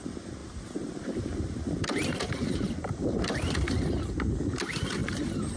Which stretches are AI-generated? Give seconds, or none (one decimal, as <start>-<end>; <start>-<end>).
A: 0.4-3.5; 5.0-5.6